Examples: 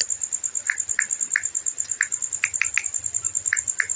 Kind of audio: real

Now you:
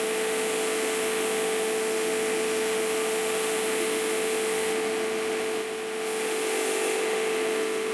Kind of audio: fake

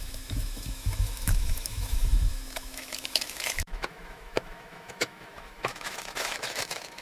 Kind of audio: fake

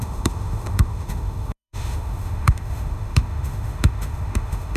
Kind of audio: fake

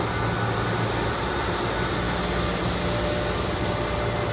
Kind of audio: real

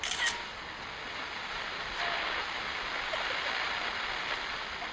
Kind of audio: real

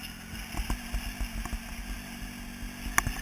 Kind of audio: real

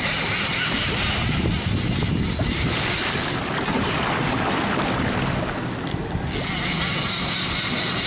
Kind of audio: real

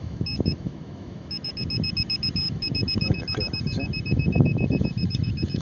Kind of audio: fake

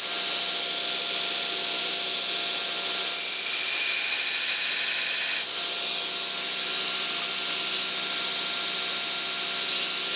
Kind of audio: real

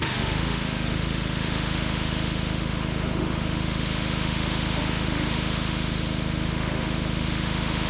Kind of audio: fake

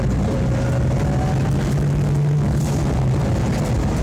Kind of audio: real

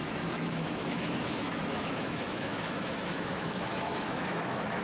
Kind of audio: fake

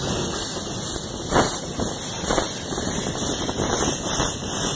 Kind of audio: real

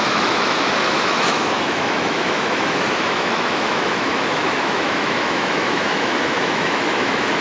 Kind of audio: fake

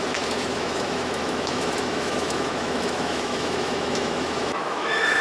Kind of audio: fake